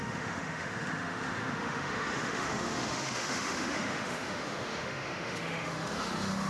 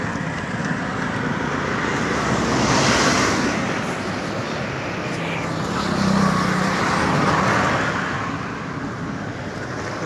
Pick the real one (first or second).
second